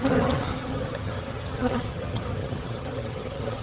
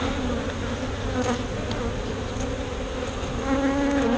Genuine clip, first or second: second